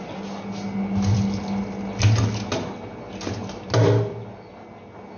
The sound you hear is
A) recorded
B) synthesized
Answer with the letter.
A